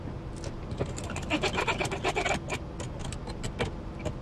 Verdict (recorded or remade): recorded